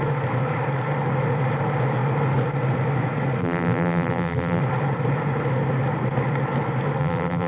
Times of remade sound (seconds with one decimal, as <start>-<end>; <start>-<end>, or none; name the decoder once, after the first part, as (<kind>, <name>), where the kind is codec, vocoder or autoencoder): 3.4-4.6 (vocoder, BigVGAN v2); 7.0-7.5